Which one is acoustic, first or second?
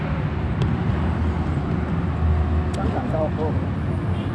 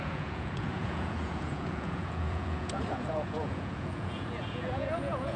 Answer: first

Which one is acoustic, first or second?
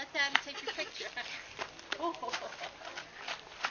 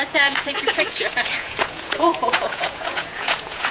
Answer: first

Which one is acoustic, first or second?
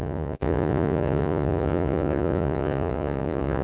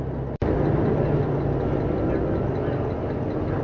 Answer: second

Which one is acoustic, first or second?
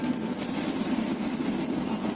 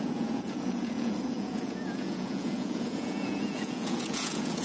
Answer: first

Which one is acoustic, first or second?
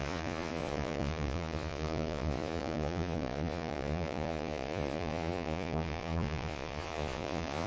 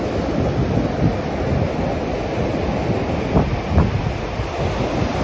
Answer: second